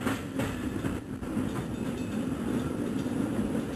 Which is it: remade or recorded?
recorded